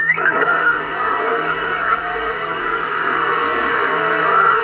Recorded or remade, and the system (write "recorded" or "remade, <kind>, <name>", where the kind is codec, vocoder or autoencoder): remade, codec, SNAC